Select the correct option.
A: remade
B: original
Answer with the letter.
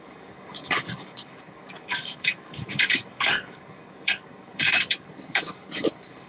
A